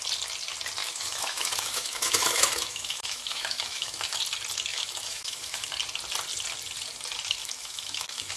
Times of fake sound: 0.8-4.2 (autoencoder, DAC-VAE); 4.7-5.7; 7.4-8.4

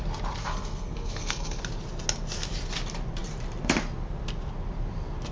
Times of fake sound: 0.4-1.6 (codec, SNAC)